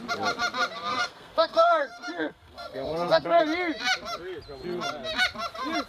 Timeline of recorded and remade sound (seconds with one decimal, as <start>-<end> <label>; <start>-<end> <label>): 0.0-0.9 recorded; 0.9-3.4 remade; 3.4-5.9 recorded